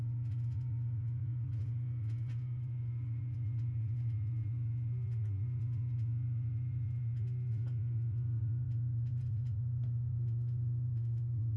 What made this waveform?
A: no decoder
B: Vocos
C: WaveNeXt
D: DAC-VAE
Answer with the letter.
B